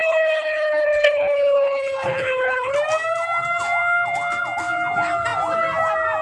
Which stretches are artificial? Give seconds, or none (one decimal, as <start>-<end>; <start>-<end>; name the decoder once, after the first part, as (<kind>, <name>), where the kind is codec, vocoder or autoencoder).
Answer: 0.0-2.7 (codec, HILCodec)